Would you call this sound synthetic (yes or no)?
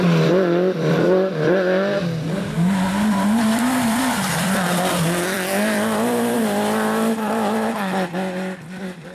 yes